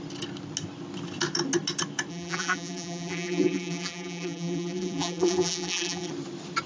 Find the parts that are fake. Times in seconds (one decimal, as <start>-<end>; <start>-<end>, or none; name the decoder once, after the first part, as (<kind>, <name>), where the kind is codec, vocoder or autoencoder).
2.1-6.1 (vocoder, BigVGAN v2)